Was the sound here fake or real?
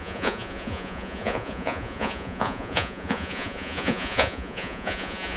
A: fake